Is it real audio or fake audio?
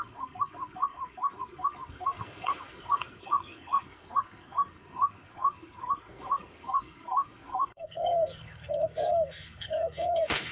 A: fake